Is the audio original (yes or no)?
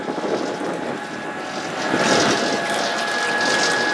yes